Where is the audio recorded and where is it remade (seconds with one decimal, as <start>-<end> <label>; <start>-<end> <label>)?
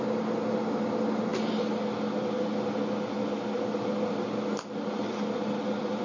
0.0-6.0 recorded